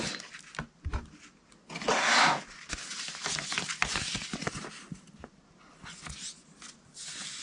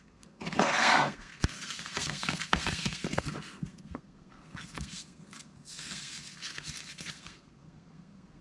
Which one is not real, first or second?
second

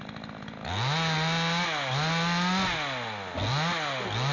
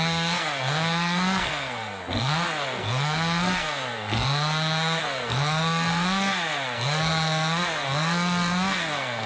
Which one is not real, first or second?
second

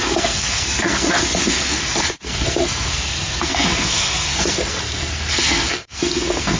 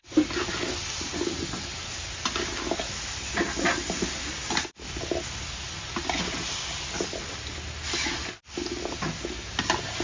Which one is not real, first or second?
first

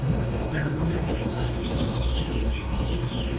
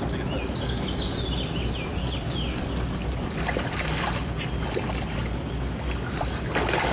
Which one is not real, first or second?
first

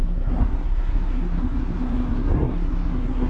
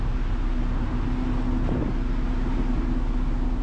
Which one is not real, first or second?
first